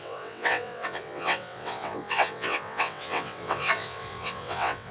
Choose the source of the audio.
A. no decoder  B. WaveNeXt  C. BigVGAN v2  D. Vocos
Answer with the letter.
B